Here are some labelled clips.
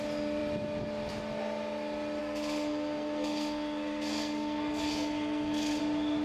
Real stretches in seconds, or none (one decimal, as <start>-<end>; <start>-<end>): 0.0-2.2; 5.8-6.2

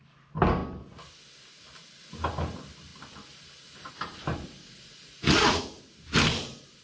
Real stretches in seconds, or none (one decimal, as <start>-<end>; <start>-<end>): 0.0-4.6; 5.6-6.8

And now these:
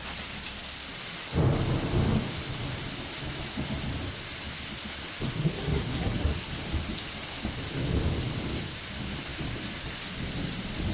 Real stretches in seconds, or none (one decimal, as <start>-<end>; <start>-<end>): 0.0-5.3; 6.5-10.9

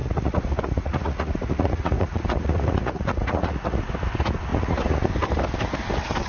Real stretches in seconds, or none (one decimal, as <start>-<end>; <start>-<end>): 3.8-4.5; 5.1-6.3

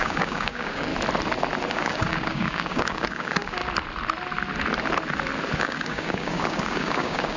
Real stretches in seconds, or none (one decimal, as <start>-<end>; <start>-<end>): 0.9-1.7; 3.6-5.6

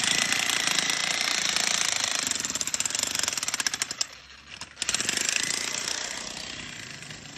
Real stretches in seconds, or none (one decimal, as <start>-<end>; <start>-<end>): 0.0-7.4